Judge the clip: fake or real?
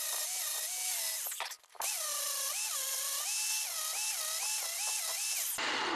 real